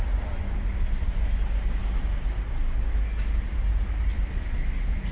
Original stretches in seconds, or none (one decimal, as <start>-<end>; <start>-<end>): 0.0-5.1